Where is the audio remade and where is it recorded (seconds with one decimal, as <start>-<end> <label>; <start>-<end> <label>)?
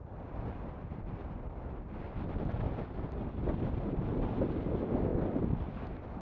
0.0-6.2 recorded